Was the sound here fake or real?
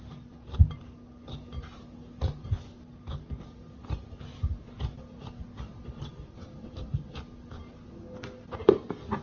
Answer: real